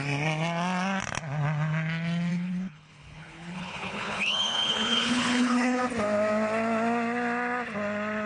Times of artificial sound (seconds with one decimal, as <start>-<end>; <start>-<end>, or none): 2.3-5.8

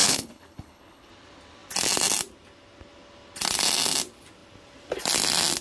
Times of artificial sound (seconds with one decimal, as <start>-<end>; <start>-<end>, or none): 0.0-1.1

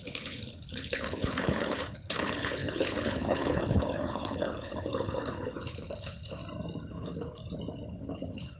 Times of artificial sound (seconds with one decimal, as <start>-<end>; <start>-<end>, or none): 0.0-6.4; 6.9-7.4; 7.9-8.6

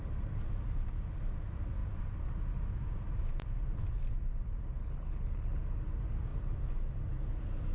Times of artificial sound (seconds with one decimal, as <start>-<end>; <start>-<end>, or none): 4.8-5.6

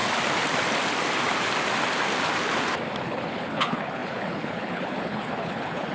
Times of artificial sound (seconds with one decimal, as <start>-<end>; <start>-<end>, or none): 3.0-5.9

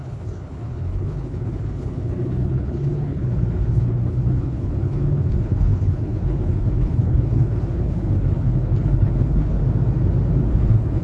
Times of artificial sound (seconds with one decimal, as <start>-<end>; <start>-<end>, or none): 0.0-9.6; 10.5-11.0

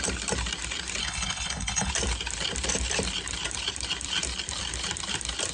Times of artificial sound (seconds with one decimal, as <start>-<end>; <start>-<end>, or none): 1.0-1.9